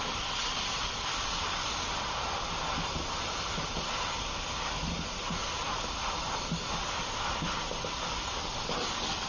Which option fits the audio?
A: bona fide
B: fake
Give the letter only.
A